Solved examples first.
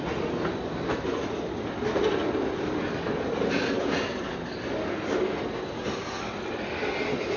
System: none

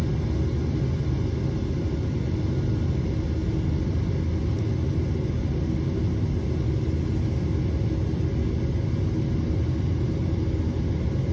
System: none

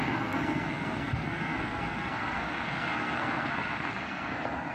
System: codec, SNAC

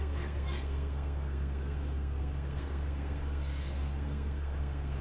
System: codec, SNAC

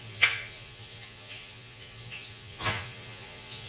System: vocoder, Vocos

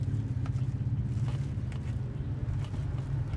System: none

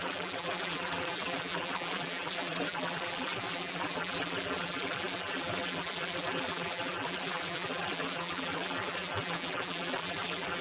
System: vocoder, BigVGAN v2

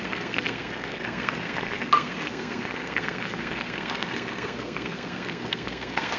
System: codec, SNAC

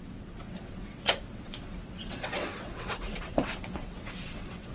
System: vocoder, WaveNeXt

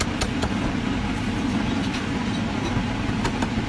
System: none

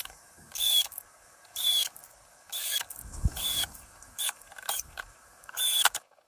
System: codec, DAC